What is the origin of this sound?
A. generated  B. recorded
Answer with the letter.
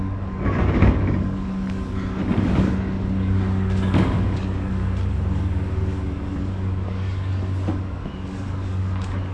A